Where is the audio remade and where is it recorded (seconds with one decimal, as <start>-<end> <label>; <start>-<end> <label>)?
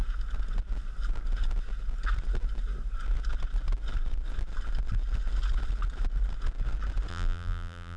0.0-7.1 recorded; 7.1-8.0 remade